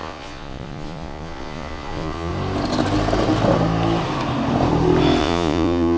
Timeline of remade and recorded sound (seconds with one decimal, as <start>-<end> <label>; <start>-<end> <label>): 0.0-2.3 remade; 2.3-5.2 recorded; 5.2-6.0 remade